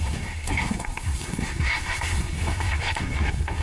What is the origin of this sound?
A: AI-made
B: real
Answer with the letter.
A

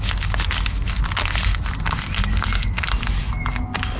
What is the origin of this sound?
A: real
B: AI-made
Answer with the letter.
A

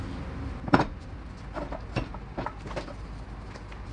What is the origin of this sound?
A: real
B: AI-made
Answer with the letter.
A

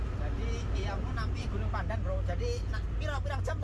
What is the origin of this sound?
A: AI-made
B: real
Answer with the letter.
B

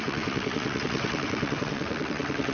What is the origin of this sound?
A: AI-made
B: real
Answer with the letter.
A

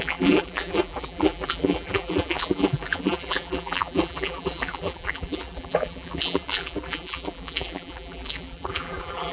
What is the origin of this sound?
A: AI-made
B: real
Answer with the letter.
A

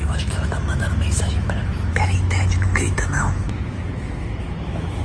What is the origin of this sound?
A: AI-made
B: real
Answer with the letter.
A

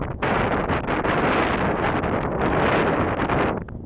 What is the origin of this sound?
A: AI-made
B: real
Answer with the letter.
B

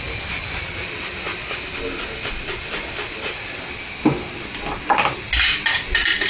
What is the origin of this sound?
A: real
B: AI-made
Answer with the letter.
A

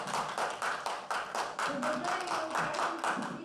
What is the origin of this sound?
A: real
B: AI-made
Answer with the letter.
A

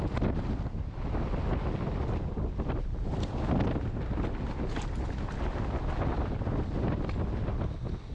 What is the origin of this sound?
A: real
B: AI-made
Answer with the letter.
A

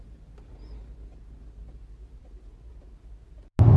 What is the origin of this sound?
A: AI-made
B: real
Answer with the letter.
B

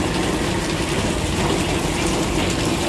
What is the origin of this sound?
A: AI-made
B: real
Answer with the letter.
B